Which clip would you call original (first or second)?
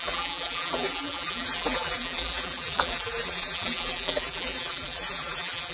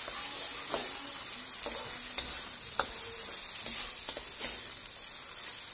second